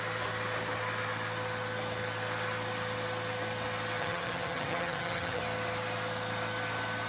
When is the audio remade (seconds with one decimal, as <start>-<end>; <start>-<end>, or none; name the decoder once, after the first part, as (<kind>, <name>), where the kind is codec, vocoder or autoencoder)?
4.0-5.4 (vocoder, HiFi-GAN)